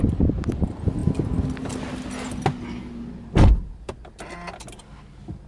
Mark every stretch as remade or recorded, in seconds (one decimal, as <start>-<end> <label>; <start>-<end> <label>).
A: 0.0-5.5 recorded